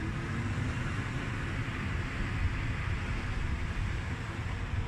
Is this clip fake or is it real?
real